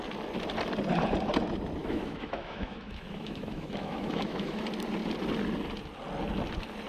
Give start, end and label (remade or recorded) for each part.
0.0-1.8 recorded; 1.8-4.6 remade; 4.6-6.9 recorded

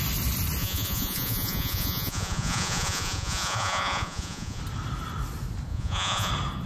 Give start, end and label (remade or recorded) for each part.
0.0-0.6 recorded; 0.6-4.6 remade; 4.6-5.7 recorded; 5.7-6.3 remade; 6.3-6.7 recorded

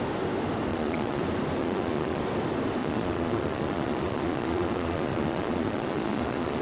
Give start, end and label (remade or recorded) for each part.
0.0-0.7 recorded; 0.7-1.2 remade; 1.2-1.6 recorded; 1.6-2.2 remade; 2.2-2.8 recorded; 2.8-6.6 remade

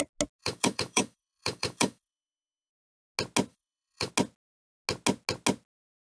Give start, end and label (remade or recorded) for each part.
0.0-0.4 recorded; 0.4-2.7 remade; 2.7-3.5 recorded; 3.5-4.1 remade; 4.1-6.2 recorded